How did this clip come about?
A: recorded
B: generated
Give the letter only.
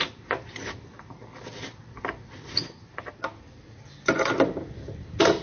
A